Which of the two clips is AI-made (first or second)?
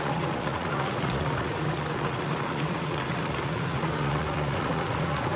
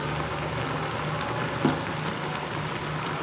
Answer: first